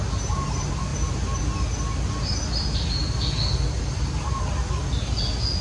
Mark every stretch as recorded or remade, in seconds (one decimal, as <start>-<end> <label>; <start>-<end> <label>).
0.0-5.6 recorded